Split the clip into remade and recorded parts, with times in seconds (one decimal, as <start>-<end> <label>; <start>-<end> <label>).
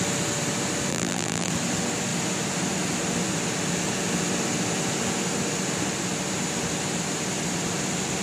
0.0-0.9 recorded; 0.9-1.5 remade; 1.5-8.2 recorded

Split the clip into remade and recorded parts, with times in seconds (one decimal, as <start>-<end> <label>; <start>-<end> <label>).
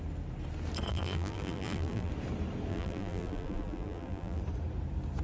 0.0-0.9 recorded; 0.9-2.1 remade; 2.1-2.7 recorded; 2.7-4.4 remade; 4.4-5.2 recorded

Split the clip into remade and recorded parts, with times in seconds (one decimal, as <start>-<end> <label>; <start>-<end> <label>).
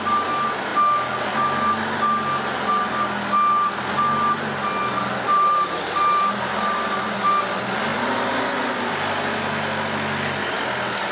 0.0-5.3 recorded; 5.3-6.2 remade; 6.2-11.1 recorded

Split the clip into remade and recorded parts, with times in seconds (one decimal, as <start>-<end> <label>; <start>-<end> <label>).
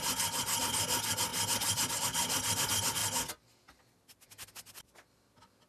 0.0-5.7 recorded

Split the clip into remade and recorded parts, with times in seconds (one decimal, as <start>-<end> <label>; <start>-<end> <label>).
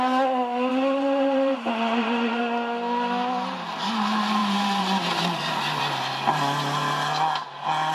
0.0-0.7 recorded; 0.7-2.4 remade; 2.4-4.4 recorded; 4.4-5.8 remade; 5.8-7.9 recorded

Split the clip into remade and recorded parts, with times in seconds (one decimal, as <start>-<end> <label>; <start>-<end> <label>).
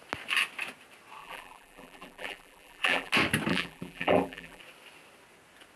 0.0-1.2 recorded; 1.2-3.1 remade; 3.1-3.5 recorded; 3.5-4.6 remade; 4.6-5.8 recorded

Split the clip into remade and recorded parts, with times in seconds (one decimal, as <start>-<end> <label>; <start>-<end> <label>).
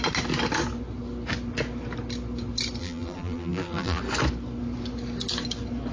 0.0-2.8 recorded; 2.8-4.0 remade; 4.0-5.9 recorded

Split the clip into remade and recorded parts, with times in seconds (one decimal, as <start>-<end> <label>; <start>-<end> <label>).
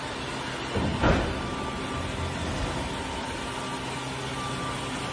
0.0-5.1 recorded